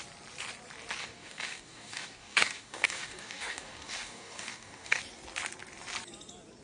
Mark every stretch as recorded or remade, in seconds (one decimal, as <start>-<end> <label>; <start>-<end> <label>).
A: 0.0-1.0 recorded; 1.0-5.0 remade; 5.0-6.6 recorded